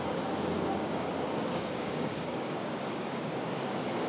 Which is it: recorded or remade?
remade